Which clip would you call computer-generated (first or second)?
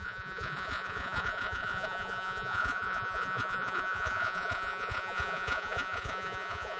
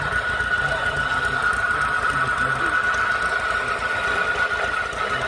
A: first